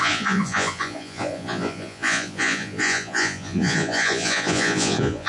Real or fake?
fake